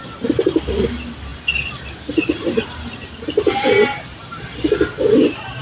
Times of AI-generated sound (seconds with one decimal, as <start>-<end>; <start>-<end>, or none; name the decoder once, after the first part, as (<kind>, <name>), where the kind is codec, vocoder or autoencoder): none